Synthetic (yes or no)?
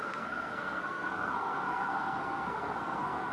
yes